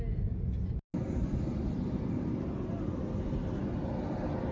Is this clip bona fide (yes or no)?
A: yes